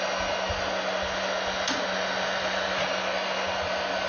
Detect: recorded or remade recorded